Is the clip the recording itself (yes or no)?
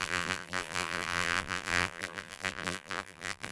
no